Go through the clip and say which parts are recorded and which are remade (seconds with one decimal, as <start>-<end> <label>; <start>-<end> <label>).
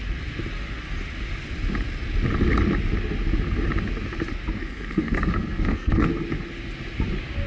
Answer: 0.0-4.6 recorded; 4.6-6.1 remade; 6.1-7.5 recorded